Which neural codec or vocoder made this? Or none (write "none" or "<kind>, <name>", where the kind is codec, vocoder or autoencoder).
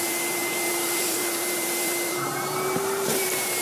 vocoder, BigVGAN v2